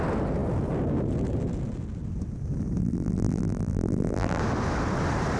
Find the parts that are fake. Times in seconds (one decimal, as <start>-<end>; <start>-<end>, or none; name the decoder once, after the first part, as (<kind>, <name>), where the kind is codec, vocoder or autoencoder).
2.8-4.4 (vocoder, BigVGAN v2)